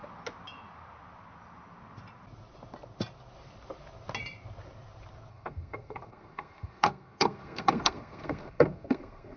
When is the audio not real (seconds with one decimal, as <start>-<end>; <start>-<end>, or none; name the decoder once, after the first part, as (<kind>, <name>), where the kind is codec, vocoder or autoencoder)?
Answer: 5.3-9.4 (codec, SNAC)